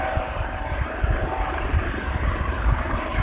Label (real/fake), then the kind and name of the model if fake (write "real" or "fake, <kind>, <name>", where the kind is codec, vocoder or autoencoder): fake, vocoder, BigVGAN v2